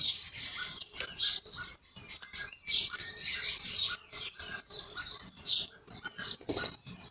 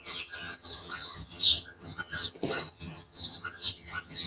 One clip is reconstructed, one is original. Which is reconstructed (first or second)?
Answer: second